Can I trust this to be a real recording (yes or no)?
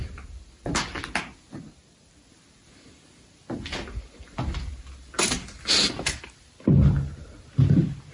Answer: yes